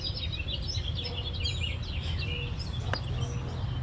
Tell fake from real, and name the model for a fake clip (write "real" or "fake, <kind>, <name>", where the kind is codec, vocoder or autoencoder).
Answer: real